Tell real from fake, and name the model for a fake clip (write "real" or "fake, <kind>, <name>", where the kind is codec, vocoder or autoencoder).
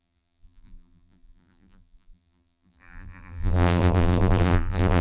fake, vocoder, BigVGAN v2